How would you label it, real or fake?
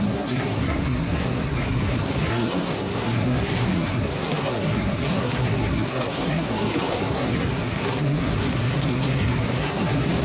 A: fake